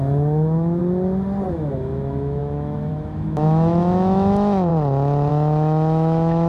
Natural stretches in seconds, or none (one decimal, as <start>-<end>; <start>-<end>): 0.8-1.5; 4.7-5.3